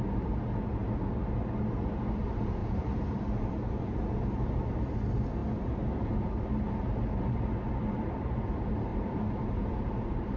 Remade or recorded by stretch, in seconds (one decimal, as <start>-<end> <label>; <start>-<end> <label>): 0.0-2.6 recorded; 2.6-3.8 remade; 3.8-8.9 recorded; 8.9-10.4 remade